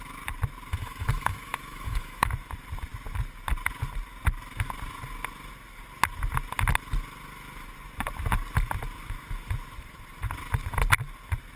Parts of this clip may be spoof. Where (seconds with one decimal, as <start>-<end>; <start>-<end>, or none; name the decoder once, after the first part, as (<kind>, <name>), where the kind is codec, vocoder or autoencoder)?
0.7-2.3 (autoencoder, DAC-VAE)